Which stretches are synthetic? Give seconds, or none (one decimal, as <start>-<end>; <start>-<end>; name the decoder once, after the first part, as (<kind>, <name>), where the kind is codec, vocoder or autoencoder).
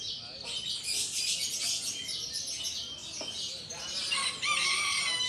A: none